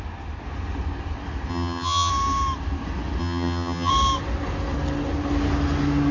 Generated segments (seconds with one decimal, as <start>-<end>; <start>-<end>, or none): 1.5-2.1; 3.2-3.9